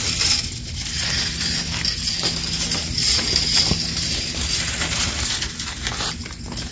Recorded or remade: recorded